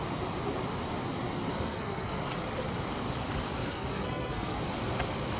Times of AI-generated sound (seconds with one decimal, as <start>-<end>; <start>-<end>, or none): 1.5-2.2; 3.6-4.6